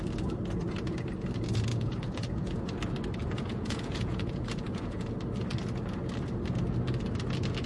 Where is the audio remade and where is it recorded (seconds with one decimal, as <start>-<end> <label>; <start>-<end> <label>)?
0.0-1.7 recorded; 1.7-2.6 remade; 2.6-3.2 recorded; 3.2-5.1 remade; 5.1-7.7 recorded